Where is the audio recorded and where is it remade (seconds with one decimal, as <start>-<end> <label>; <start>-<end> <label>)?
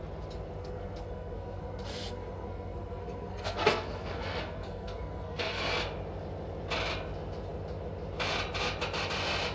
0.0-0.6 recorded; 0.6-5.6 remade; 5.6-9.5 recorded